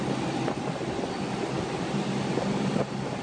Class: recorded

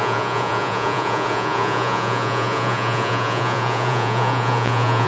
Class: remade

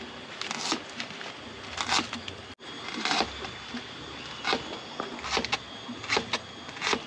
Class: recorded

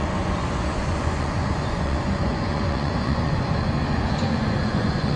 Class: remade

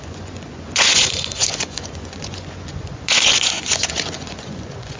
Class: remade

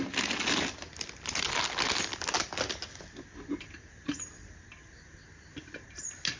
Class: recorded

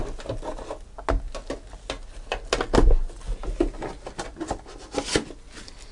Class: recorded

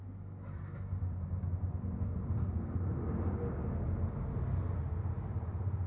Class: recorded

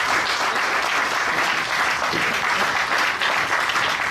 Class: recorded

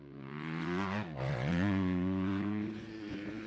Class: remade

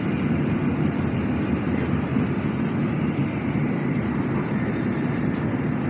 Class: recorded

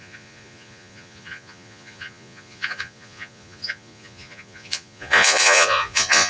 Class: remade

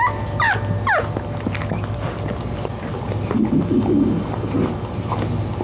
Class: recorded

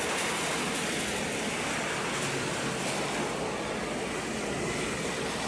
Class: recorded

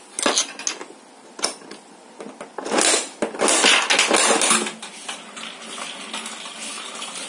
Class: recorded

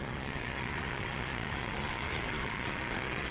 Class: remade